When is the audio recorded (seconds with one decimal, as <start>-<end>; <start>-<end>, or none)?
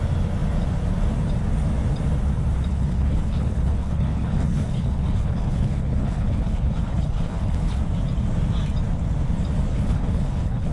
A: 0.0-2.7; 7.8-9.7